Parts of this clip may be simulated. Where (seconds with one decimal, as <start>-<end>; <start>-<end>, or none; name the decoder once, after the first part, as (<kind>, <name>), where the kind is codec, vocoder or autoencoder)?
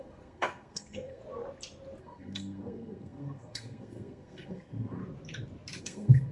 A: 0.0-1.2 (codec, SNAC); 2.0-5.0; 5.8-6.3